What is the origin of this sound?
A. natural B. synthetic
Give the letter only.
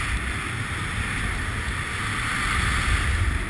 A